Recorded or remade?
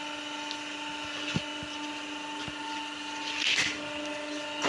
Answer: recorded